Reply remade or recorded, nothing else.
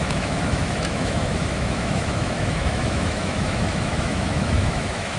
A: remade